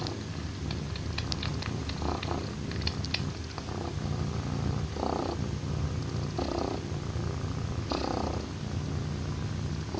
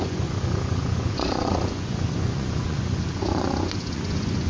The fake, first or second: second